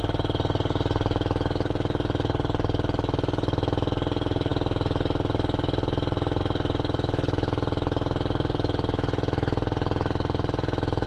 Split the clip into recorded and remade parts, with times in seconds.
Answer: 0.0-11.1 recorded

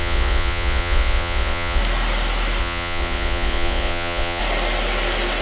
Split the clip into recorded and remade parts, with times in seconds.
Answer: 0.0-1.8 remade; 1.8-2.6 recorded; 2.6-4.4 remade; 4.4-5.4 recorded

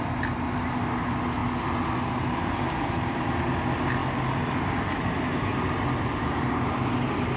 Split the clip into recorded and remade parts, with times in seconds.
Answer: 0.0-7.4 recorded

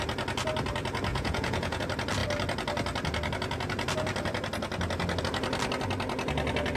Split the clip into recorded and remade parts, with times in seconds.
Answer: 0.0-1.1 recorded; 1.1-1.8 remade; 1.8-6.8 recorded

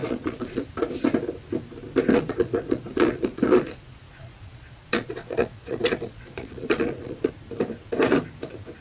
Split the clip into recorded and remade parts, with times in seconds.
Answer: 0.0-0.6 remade; 0.6-2.1 recorded; 2.1-7.3 remade; 7.3-8.8 recorded

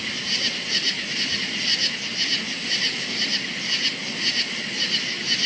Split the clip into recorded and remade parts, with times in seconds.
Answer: 0.0-5.5 recorded

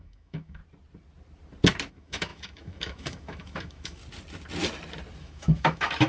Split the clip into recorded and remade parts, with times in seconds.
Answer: 0.0-0.6 remade; 0.6-1.9 recorded; 1.9-4.0 remade; 4.0-5.2 recorded; 5.2-6.1 remade